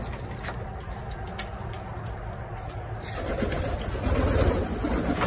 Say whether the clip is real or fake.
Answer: real